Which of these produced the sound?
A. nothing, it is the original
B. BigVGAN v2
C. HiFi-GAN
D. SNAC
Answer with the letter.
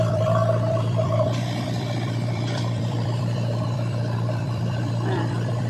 B